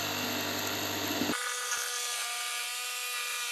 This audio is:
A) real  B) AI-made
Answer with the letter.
A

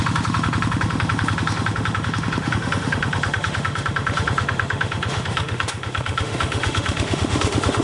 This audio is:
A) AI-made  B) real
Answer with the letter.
A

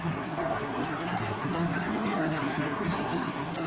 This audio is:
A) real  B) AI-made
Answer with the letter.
B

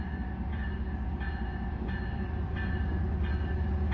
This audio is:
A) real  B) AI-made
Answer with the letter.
A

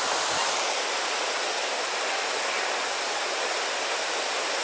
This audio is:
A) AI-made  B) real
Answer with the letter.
B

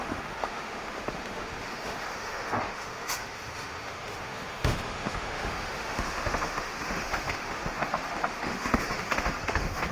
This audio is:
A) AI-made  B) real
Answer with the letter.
A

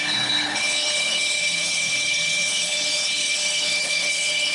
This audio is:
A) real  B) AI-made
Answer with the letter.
B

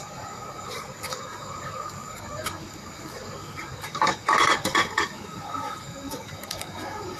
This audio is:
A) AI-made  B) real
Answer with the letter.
A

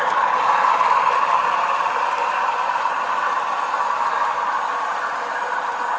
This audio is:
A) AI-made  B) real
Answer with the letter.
A